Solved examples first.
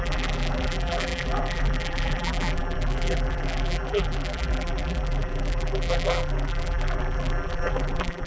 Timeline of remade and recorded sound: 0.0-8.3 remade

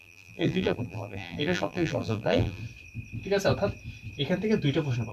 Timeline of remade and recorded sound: 0.0-2.6 remade; 2.6-5.1 recorded

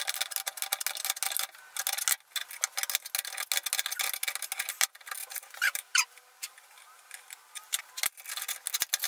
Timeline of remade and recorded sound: 0.0-5.2 recorded; 5.2-7.8 remade; 7.8-9.1 recorded